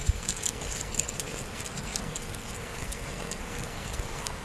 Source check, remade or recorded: remade